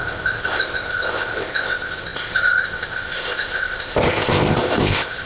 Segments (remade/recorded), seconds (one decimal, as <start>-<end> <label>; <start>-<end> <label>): 0.0-5.3 remade